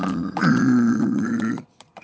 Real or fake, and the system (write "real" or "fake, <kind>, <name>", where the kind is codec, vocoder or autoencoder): fake, vocoder, Vocos